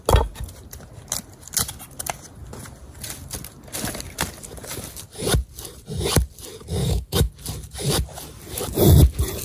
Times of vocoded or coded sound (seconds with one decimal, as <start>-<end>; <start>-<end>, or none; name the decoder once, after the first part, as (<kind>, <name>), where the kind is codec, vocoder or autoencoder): 6.8-7.3 (autoencoder, DAC-VAE)